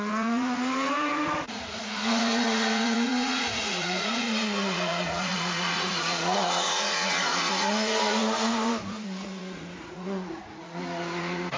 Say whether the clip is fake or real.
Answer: fake